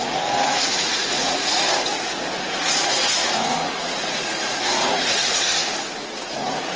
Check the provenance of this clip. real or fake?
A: fake